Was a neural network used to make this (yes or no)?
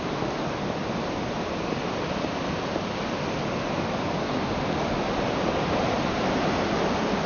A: no